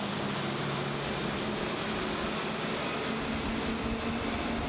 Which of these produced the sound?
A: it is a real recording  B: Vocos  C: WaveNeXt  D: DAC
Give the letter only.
A